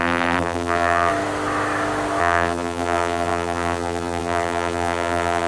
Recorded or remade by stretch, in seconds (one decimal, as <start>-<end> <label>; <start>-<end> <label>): 0.0-1.1 remade; 1.1-2.2 recorded; 2.2-5.5 remade